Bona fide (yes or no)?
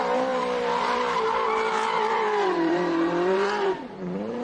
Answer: no